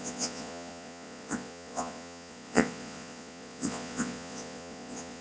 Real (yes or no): no